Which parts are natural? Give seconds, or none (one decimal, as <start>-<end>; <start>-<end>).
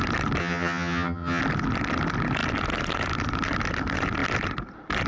0.0-0.4; 1.4-5.1